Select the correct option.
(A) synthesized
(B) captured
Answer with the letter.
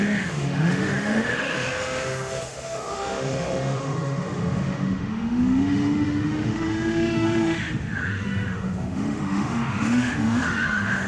A